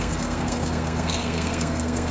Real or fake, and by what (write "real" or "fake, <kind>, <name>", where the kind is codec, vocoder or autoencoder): fake, codec, SNAC